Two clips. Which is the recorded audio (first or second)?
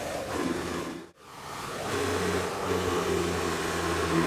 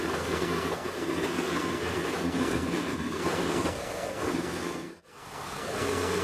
first